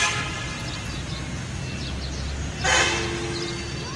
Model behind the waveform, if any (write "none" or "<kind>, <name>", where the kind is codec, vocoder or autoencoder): none